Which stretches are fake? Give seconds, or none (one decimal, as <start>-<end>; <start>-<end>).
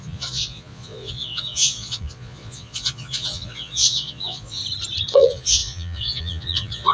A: 0.0-4.6; 5.1-6.9